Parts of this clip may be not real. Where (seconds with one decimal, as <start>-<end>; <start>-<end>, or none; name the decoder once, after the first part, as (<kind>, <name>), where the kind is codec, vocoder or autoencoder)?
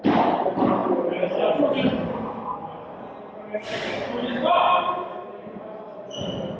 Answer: 0.8-1.5 (vocoder, BigVGAN v2)